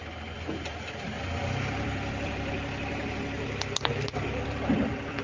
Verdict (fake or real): fake